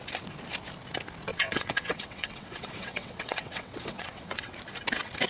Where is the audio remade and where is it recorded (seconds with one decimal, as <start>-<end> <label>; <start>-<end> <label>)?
0.0-1.3 recorded; 1.3-4.5 remade; 4.5-5.3 recorded